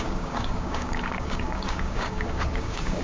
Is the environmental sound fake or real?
fake